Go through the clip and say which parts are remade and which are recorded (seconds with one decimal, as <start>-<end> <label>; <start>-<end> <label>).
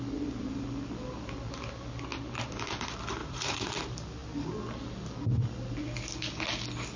0.0-3.2 recorded; 3.2-3.7 remade; 3.7-7.0 recorded